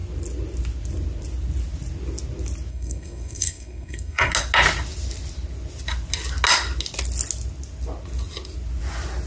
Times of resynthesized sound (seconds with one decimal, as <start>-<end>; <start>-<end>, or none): 2.7-4.3

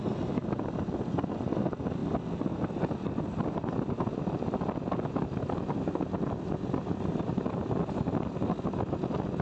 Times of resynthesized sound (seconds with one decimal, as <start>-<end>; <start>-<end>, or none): none

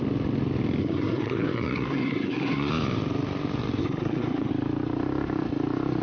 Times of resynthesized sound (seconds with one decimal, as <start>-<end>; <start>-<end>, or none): 0.8-2.7; 3.8-4.5

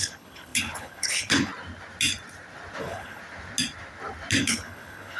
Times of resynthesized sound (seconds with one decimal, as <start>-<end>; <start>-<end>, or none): 0.0-1.5; 2.8-3.2; 4.4-5.2

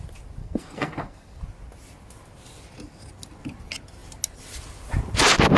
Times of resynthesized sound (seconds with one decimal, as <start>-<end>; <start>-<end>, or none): 0.4-1.4

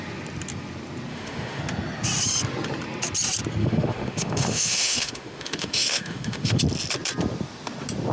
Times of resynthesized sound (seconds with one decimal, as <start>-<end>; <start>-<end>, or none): 1.1-1.6; 3.6-6.6